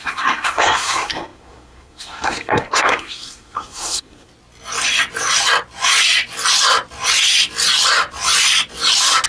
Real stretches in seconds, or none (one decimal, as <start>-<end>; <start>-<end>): 4.3-9.3